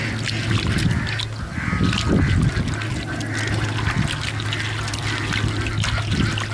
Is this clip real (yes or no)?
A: yes